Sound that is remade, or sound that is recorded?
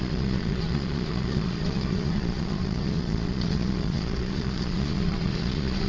remade